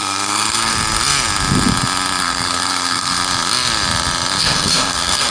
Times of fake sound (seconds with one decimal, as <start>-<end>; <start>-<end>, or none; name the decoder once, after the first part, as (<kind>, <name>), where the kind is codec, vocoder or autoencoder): 0.0-0.7 (codec, SNAC); 2.2-3.2; 4.4-5.3